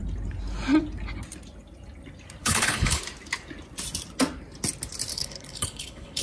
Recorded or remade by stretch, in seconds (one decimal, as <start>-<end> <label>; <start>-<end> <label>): 0.0-2.4 recorded; 2.4-3.0 remade; 3.0-5.1 recorded; 5.1-6.2 remade